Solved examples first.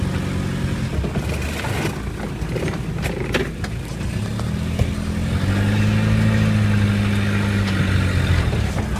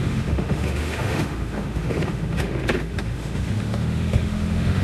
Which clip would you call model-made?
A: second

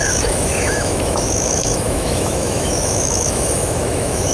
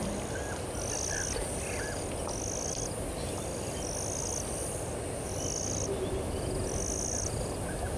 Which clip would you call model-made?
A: first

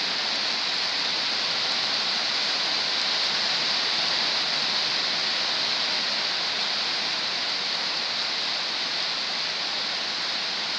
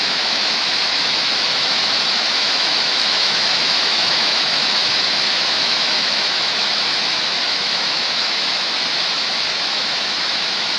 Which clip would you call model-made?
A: second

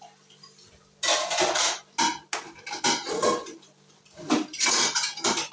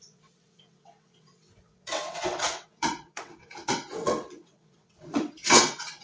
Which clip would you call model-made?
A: second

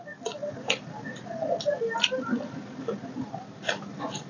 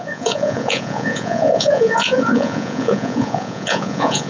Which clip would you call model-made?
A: second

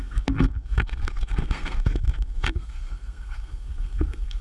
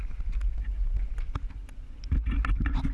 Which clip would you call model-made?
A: first